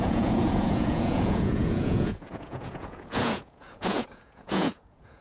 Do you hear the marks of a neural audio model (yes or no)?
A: yes